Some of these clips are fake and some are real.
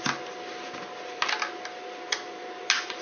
real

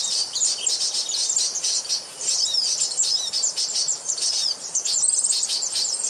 fake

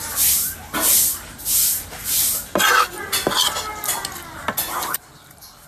real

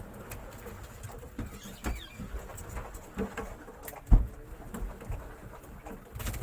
real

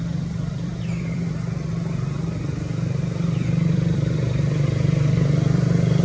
fake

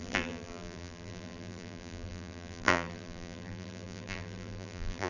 fake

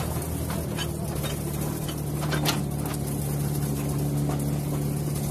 real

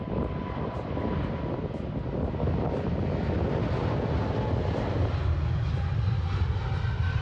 real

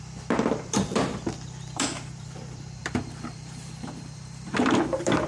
fake